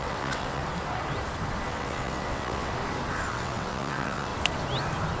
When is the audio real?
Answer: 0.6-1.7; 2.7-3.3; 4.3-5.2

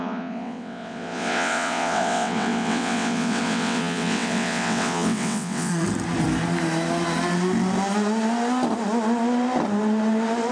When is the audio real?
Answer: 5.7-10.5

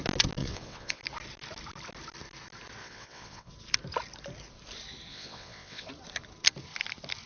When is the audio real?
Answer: 0.0-0.4; 1.0-2.8; 3.5-5.1; 5.9-7.3

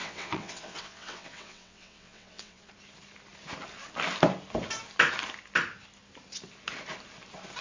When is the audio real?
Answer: 2.7-7.6

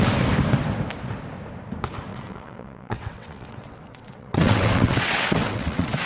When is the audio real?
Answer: 0.0-2.1

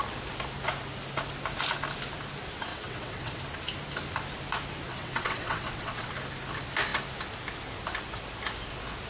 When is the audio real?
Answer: 0.0-2.7; 3.4-4.9; 6.1-9.1

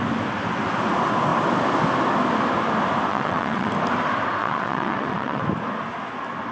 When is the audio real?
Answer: 0.0-3.1; 3.7-4.4; 5.4-6.5